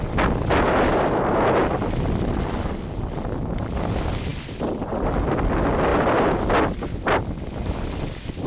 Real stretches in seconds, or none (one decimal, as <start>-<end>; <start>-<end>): 0.0-8.5